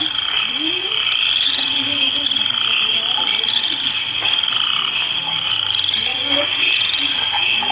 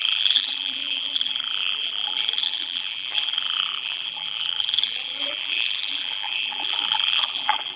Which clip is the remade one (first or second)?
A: second